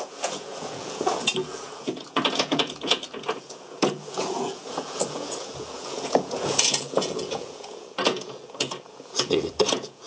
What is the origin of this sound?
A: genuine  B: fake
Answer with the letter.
B